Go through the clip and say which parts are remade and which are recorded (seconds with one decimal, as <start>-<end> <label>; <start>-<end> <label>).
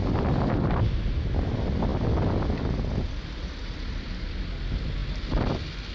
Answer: 0.0-5.9 recorded